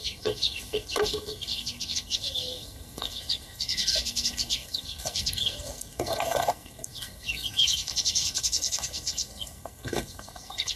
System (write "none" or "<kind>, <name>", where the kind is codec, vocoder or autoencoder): codec, SNAC